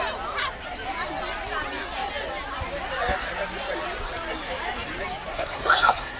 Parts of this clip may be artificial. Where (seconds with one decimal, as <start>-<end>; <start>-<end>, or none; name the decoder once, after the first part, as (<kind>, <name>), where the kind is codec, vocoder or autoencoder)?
5.3-6.2 (codec, SNAC)